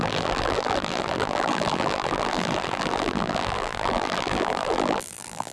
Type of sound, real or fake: fake